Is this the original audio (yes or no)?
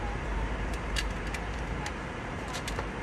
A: no